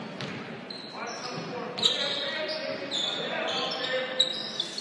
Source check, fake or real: real